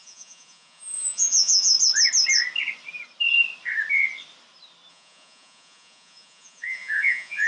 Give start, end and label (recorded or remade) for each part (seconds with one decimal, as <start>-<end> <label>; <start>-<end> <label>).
0.0-1.7 remade; 1.7-4.9 recorded; 4.9-7.5 remade